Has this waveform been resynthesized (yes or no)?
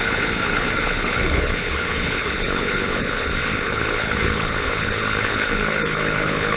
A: yes